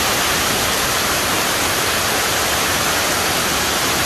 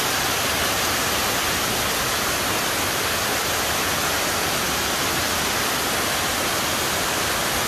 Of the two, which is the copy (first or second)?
first